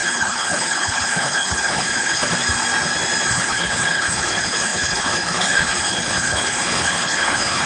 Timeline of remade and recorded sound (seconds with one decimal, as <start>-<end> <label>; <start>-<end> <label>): 0.0-2.2 remade; 2.2-3.3 recorded; 3.3-7.7 remade